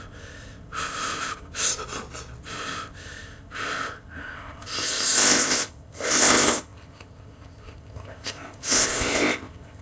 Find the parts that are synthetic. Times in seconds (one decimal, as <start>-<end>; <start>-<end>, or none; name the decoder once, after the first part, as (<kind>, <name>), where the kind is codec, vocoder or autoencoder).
0.0-1.7 (codec, ZipCodec); 2.4-9.8